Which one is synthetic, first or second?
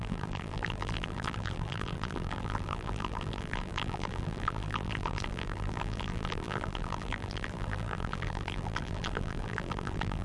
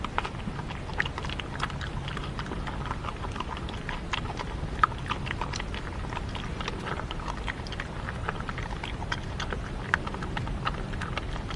first